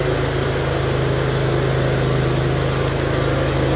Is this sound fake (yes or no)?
no